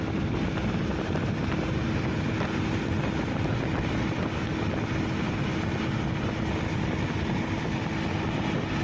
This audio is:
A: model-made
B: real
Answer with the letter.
B